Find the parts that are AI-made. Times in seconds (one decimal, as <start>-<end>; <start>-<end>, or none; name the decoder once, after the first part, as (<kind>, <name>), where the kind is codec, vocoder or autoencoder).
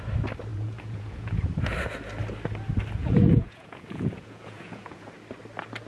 0.5-1.4 (vocoder, Vocos); 3.0-5.1